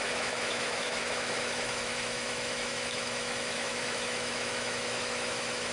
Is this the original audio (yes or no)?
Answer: no